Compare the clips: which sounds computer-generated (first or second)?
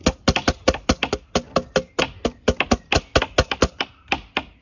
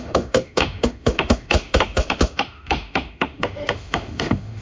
second